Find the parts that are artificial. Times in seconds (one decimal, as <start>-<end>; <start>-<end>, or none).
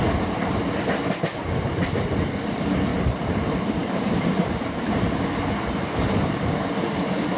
2.9-7.4